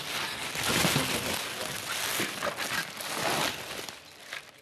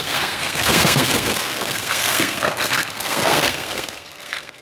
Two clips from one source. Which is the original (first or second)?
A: first